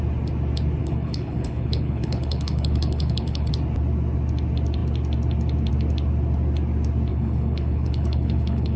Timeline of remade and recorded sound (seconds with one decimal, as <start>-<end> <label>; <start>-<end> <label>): 0.0-0.8 recorded; 0.8-3.5 remade; 3.5-7.1 recorded; 7.1-8.8 remade